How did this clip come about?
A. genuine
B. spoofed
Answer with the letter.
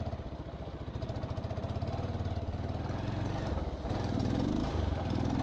A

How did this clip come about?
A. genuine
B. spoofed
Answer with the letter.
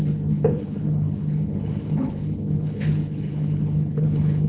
B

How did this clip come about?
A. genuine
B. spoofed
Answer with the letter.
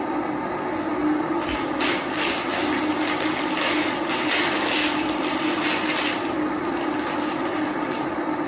A